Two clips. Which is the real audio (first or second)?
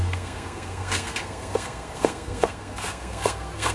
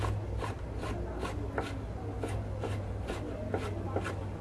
second